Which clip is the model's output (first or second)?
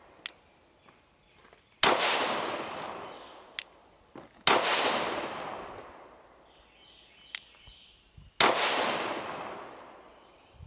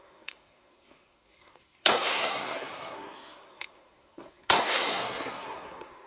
second